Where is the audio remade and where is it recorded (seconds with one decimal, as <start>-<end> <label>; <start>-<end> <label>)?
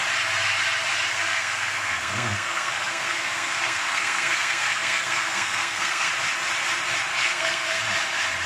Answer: 0.0-1.1 recorded; 1.1-6.1 remade; 6.1-7.1 recorded; 7.1-7.8 remade; 7.8-8.5 recorded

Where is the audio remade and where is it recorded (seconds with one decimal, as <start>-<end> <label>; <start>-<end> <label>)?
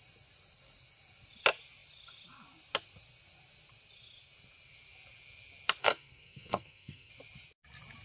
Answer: 0.0-5.8 recorded; 5.8-7.1 remade; 7.1-8.0 recorded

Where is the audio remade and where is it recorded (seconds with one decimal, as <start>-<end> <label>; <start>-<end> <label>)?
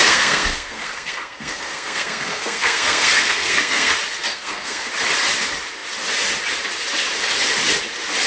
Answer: 0.0-3.9 remade; 3.9-4.3 recorded; 4.3-4.9 remade; 4.9-8.3 recorded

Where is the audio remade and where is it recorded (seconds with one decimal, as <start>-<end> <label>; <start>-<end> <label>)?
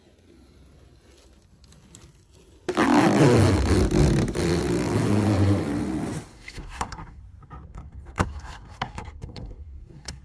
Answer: 0.0-6.3 recorded; 6.3-7.2 remade; 7.2-7.7 recorded; 7.7-10.2 remade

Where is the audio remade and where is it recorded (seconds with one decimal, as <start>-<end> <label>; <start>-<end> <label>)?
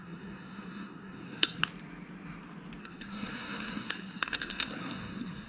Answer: 0.0-1.6 remade; 1.6-2.8 recorded; 2.8-5.5 remade